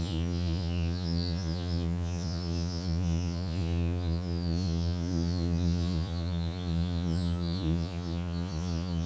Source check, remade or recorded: remade